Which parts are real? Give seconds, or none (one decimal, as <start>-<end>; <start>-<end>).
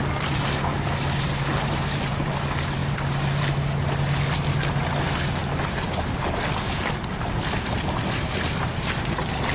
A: 0.0-9.5